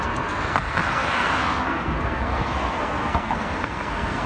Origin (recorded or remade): remade